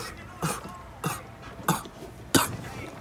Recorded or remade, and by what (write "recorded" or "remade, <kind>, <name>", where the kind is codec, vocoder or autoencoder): recorded